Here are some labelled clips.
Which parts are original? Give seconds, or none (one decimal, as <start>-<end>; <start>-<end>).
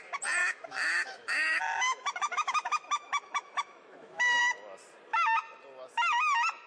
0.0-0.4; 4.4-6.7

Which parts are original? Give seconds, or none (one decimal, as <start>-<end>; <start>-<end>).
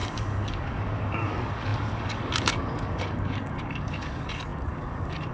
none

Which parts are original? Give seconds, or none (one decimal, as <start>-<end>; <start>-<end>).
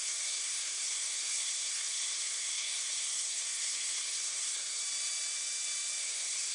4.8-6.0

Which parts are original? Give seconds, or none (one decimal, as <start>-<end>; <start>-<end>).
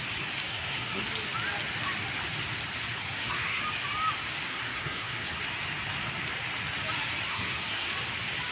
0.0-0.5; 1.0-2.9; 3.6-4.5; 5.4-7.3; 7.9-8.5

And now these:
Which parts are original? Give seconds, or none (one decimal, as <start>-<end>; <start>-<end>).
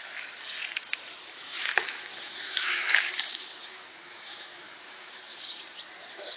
0.0-1.4; 5.2-6.4